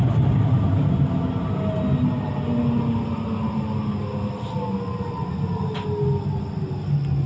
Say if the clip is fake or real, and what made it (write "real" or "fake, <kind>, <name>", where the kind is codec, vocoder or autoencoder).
real